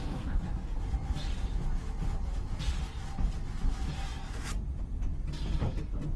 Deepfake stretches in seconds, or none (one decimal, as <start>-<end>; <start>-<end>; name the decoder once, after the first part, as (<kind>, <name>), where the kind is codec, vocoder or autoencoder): 0.0-0.8 (codec, SNAC)